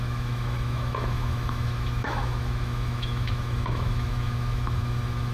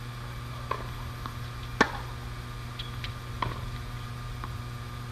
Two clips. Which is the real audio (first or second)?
second